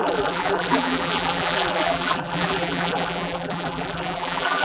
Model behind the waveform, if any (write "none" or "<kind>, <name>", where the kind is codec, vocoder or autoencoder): vocoder, BigVGAN v2